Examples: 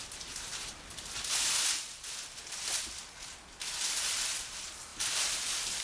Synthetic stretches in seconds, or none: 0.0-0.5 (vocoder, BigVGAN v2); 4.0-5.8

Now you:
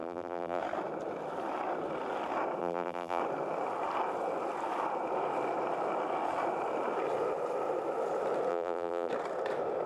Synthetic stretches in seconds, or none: 0.0-0.6 (vocoder, BigVGAN v2); 2.6-3.2; 8.5-9.1

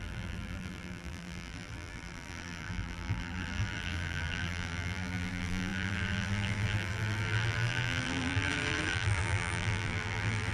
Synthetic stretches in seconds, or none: 0.0-10.5 (vocoder, BigVGAN v2)